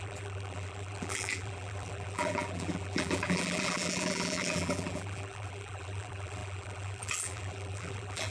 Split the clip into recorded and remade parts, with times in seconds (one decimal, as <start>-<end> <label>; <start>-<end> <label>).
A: 0.0-8.3 remade